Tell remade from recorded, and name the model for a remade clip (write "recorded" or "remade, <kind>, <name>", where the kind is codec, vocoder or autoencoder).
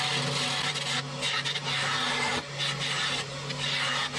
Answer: recorded